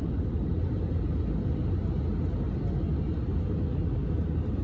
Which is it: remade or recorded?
recorded